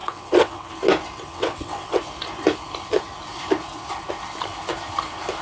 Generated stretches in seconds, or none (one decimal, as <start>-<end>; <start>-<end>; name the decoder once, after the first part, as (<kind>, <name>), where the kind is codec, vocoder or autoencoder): 0.0-0.7 (vocoder, WaveNeXt); 1.3-2.0